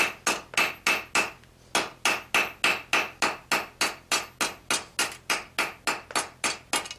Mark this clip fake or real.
real